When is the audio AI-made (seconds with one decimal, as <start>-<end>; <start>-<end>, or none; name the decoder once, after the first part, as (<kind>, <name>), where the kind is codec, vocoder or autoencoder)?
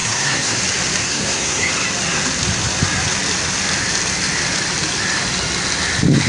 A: 0.0-0.6 (codec, SNAC); 1.0-1.7